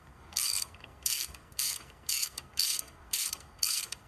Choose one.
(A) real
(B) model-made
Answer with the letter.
B